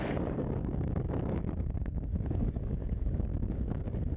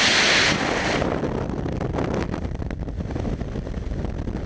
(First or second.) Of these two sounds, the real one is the second